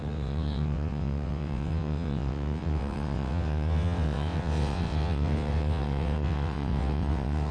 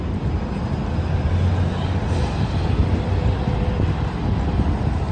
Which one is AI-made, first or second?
first